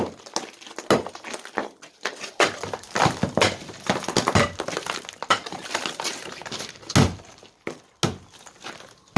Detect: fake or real real